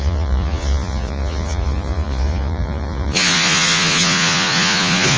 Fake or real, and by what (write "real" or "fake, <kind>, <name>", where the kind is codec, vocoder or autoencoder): fake, vocoder, Vocos